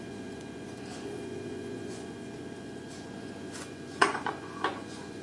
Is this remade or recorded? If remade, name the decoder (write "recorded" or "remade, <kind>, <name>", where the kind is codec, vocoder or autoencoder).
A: remade, vocoder, Vocos